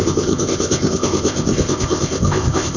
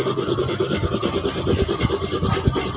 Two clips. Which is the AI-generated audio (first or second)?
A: first